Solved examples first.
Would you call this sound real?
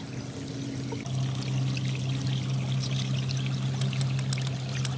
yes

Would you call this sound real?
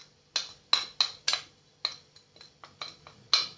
yes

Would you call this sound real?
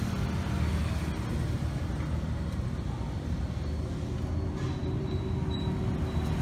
yes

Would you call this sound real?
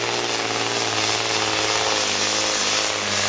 yes